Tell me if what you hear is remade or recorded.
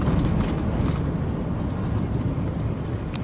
recorded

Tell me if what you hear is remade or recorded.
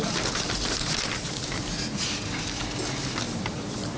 recorded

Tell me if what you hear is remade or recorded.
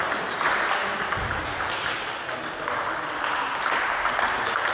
recorded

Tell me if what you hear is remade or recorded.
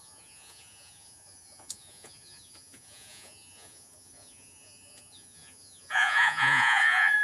remade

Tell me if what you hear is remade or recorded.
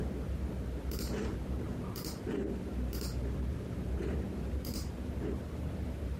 recorded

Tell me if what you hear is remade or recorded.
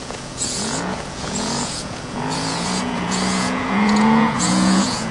remade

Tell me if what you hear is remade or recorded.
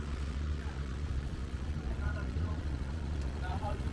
remade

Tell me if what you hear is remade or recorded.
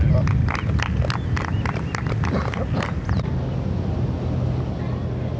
recorded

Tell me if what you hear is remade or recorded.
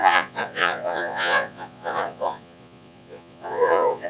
remade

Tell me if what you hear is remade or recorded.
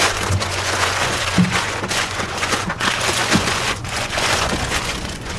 remade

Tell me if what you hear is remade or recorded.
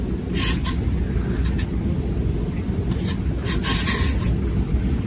recorded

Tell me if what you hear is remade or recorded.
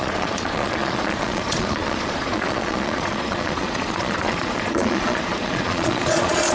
remade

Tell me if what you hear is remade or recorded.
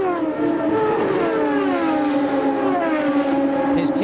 recorded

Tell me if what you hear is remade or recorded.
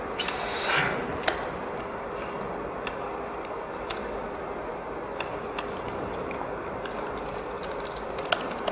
recorded